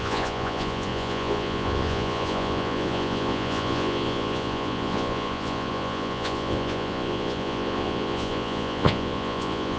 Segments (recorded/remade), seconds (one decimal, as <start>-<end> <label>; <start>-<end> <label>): 0.0-9.8 remade